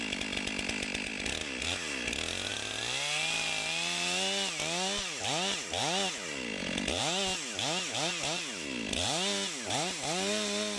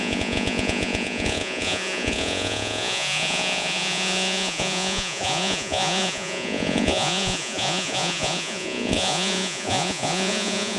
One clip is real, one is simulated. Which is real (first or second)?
first